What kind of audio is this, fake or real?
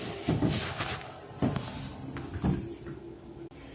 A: real